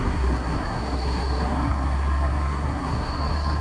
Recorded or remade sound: remade